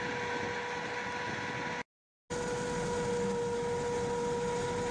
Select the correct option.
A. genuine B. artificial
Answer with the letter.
A